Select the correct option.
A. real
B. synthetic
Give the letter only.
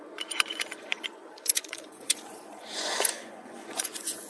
B